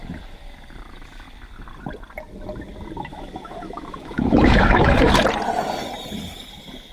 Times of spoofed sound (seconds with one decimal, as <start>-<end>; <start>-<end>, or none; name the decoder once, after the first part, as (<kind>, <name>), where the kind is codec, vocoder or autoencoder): 3.1-5.2 (autoencoder, DAC-VAE)